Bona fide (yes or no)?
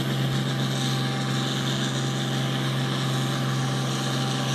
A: yes